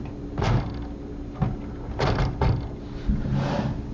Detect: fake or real real